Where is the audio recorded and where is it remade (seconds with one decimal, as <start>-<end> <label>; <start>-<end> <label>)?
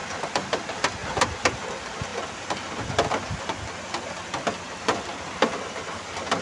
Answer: 0.0-0.6 remade; 0.6-1.0 recorded; 1.0-1.7 remade; 1.7-6.4 recorded